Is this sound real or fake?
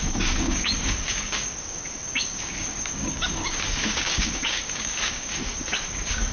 fake